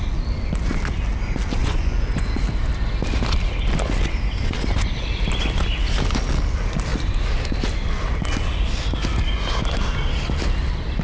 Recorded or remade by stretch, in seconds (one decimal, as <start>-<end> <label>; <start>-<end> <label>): 0.0-1.6 recorded; 1.6-2.4 remade; 2.4-11.0 recorded